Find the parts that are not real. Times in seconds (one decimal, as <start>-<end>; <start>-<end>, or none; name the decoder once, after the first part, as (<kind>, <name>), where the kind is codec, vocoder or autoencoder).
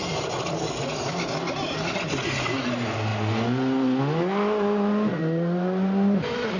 none